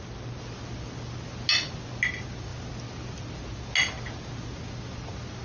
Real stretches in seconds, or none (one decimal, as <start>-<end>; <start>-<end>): 0.0-5.4